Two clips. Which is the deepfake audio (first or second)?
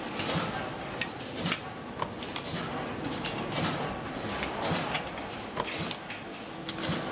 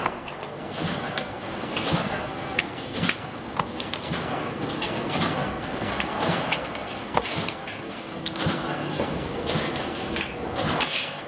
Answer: second